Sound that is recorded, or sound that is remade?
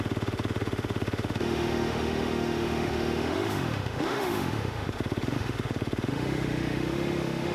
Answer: remade